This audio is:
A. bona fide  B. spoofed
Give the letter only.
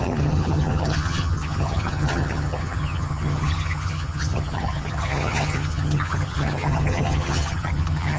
B